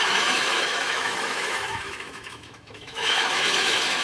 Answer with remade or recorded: remade